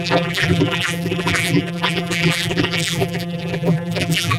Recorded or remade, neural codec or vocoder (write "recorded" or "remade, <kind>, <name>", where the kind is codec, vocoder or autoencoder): remade, vocoder, BigVGAN v2